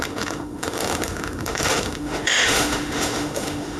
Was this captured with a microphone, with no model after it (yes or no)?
no